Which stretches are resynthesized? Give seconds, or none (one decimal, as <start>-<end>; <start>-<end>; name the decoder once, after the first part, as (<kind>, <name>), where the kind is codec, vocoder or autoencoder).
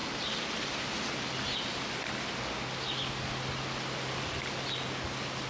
none